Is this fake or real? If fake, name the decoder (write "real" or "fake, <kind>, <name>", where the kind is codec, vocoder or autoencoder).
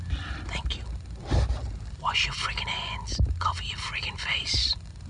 real